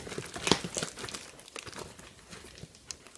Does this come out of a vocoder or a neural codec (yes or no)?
no